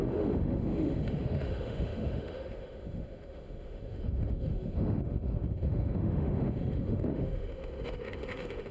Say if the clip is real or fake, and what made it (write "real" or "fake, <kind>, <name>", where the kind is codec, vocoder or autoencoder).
fake, autoencoder, DAC-VAE